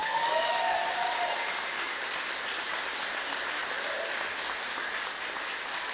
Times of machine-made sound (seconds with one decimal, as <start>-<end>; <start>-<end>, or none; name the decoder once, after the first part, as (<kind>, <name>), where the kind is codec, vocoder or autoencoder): none